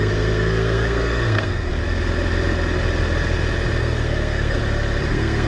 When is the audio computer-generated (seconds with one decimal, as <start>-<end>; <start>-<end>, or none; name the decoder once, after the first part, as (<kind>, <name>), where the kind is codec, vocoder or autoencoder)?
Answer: 0.0-1.7 (codec, SNAC); 3.8-4.6; 5.1-5.5